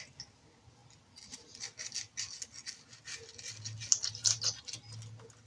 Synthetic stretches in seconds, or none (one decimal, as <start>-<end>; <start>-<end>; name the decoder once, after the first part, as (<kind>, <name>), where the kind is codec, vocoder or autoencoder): none